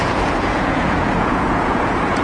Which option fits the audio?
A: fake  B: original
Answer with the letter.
A